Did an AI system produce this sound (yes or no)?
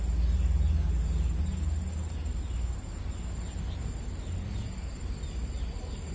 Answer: no